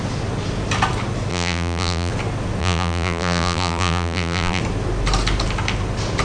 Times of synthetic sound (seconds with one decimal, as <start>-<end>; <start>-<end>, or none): 1.3-2.1; 2.6-4.6